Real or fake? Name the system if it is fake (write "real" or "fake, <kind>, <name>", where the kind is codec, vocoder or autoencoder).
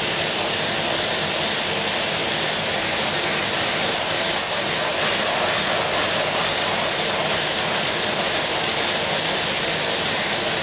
real